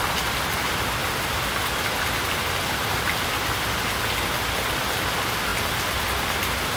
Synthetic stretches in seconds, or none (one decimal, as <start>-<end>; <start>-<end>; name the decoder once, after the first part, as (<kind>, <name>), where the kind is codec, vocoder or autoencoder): none